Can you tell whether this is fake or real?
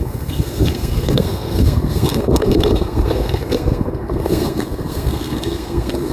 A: fake